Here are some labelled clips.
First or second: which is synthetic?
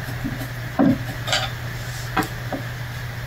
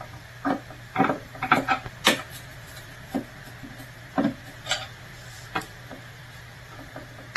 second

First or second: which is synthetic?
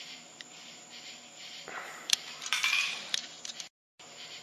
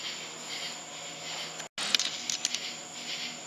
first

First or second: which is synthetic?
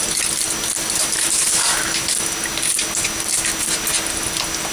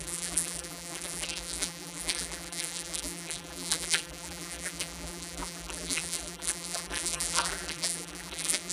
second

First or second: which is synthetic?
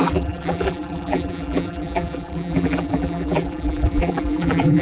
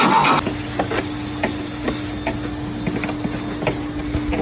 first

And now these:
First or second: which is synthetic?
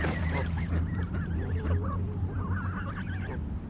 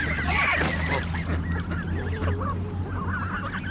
first